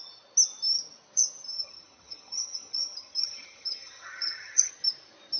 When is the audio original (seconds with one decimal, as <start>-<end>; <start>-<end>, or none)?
0.0-1.5; 4.7-5.4